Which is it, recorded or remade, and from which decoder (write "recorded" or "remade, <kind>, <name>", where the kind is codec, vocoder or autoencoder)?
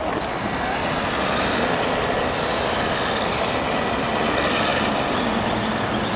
recorded